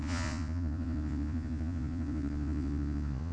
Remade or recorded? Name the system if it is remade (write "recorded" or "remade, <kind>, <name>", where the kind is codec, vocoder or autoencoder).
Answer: remade, vocoder, Vocos